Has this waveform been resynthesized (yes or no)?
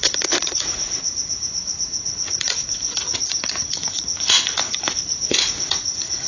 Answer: yes